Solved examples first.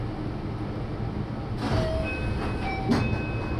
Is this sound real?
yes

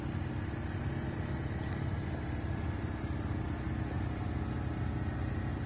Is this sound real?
yes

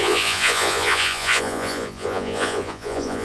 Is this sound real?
no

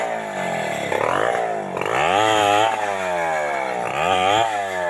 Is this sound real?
yes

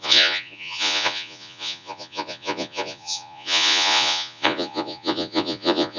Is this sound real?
no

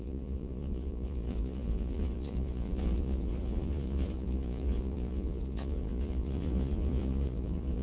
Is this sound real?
no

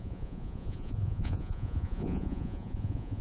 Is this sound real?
no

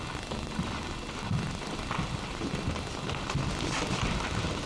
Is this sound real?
yes